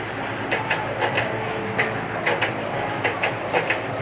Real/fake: real